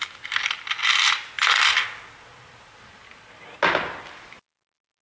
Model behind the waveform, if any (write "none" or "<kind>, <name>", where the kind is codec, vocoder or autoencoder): none